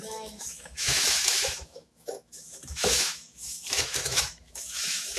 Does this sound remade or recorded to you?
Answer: remade